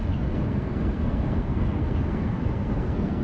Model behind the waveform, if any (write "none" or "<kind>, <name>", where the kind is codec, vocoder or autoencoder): codec, SNAC